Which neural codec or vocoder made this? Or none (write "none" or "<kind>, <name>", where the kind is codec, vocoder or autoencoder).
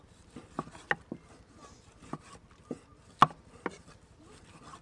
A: none